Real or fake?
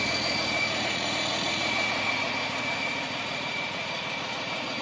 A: fake